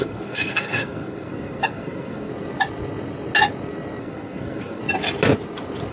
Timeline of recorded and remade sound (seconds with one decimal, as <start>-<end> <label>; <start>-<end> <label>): 0.0-2.3 remade; 2.3-4.0 recorded; 4.0-4.8 remade; 4.8-5.9 recorded